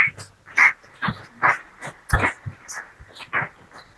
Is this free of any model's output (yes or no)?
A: yes